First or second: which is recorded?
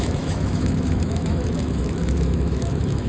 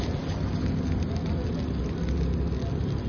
second